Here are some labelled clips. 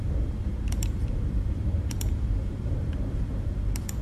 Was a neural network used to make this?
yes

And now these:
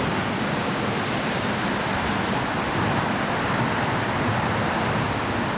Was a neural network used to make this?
no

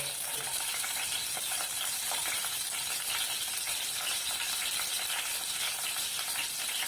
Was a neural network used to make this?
yes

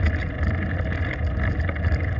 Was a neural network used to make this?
no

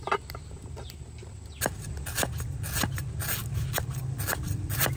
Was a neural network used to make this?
no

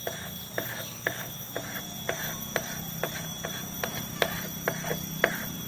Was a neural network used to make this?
yes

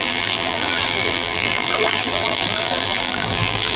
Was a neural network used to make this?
yes